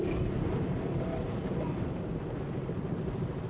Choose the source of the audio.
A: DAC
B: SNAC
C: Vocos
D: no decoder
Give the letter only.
D